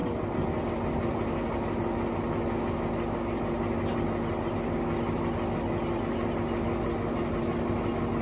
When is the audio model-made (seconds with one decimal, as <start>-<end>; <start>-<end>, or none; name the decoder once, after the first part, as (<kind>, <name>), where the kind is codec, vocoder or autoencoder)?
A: none